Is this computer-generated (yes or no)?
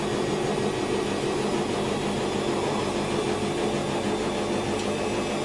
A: no